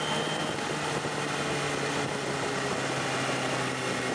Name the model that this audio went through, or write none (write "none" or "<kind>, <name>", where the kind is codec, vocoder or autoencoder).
none